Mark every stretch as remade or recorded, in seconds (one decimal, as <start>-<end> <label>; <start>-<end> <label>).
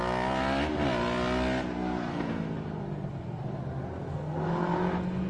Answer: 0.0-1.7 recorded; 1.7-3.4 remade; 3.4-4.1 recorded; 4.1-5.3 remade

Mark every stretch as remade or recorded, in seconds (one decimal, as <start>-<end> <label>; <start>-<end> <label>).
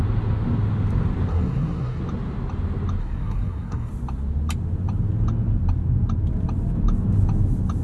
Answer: 0.0-1.3 recorded; 1.3-2.0 remade; 2.0-3.0 recorded; 3.0-3.9 remade; 3.9-7.8 recorded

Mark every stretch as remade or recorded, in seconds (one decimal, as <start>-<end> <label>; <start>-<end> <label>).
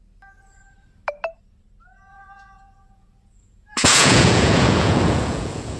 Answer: 0.0-2.1 recorded; 2.1-5.8 remade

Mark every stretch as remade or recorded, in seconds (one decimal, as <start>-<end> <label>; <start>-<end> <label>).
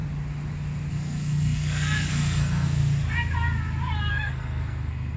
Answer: 0.0-0.9 recorded; 0.9-2.8 remade; 2.8-4.1 recorded; 4.1-5.2 remade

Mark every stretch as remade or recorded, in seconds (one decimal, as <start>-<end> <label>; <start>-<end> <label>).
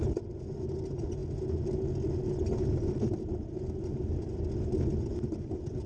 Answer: 0.0-5.9 recorded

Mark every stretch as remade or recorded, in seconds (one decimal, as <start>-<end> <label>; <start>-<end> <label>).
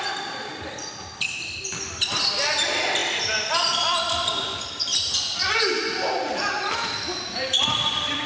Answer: 0.0-0.5 remade; 0.5-1.6 recorded; 1.6-4.9 remade; 4.9-6.5 recorded; 6.5-8.3 remade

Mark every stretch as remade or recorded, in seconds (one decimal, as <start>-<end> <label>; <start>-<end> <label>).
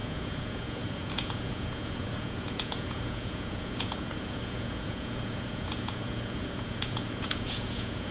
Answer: 0.0-8.1 remade